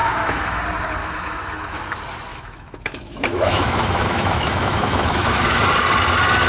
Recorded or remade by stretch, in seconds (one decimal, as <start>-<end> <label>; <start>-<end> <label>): 0.0-0.6 remade; 0.6-1.0 recorded; 1.0-1.8 remade; 1.8-2.3 recorded; 2.3-5.6 remade; 5.6-6.5 recorded